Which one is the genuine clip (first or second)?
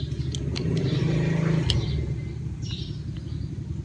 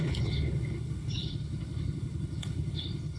first